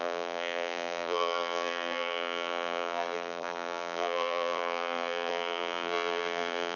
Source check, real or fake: fake